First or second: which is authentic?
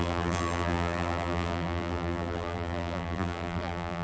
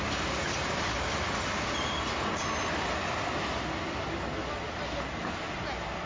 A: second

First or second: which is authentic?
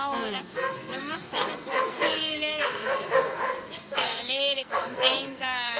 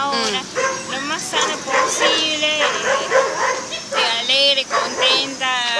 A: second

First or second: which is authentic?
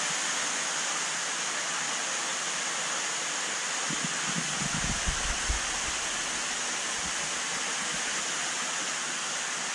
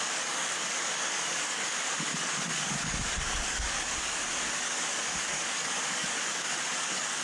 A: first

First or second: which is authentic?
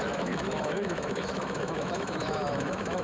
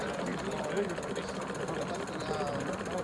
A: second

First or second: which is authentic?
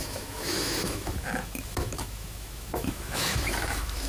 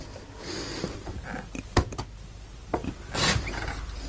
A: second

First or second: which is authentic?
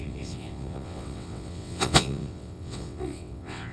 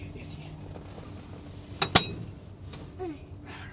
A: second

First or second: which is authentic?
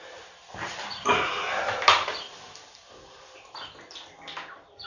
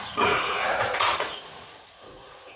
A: first